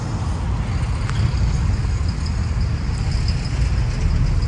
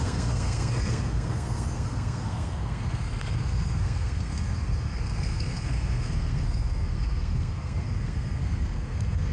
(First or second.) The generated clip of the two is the second